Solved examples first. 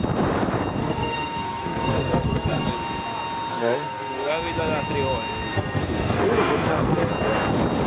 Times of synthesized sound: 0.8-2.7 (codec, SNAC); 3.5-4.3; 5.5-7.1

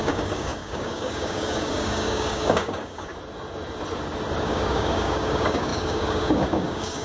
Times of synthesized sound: 0.0-3.1 (codec, DAC); 4.4-7.0

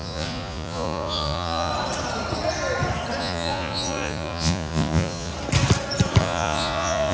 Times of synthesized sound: 0.0-1.7 (vocoder, Vocos); 3.2-5.3; 6.2-7.1